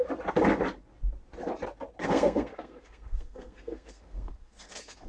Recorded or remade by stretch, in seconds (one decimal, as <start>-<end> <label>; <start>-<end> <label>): 0.0-2.0 recorded; 2.0-5.1 remade